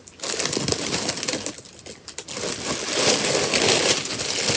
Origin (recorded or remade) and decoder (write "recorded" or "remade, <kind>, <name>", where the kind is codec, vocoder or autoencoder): recorded